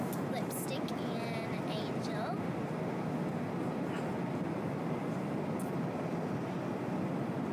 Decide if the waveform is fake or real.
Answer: real